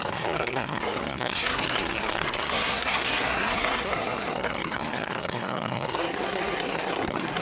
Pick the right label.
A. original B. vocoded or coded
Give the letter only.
B